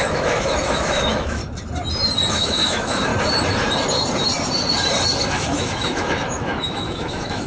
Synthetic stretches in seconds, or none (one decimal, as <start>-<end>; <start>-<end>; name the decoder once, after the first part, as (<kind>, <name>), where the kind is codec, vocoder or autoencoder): 0.0-1.4 (autoencoder, DAC-VAE); 2.3-3.1; 5.3-7.5